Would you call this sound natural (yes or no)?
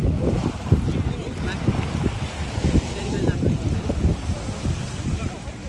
yes